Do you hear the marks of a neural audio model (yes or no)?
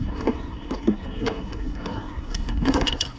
yes